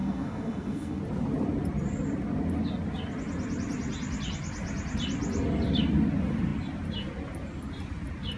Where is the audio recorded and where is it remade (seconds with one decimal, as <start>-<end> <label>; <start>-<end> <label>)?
0.0-1.0 remade; 1.0-8.4 recorded